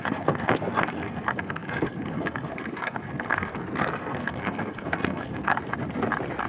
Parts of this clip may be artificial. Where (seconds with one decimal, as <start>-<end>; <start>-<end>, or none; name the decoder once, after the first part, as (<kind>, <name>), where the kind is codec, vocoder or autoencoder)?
0.0-5.6 (codec, SNAC)